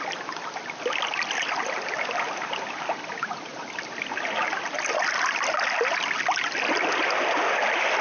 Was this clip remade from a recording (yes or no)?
no